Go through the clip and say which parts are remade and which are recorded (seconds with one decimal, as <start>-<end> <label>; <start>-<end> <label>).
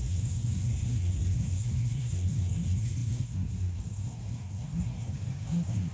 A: 0.0-5.9 remade